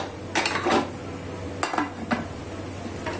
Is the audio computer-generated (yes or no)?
no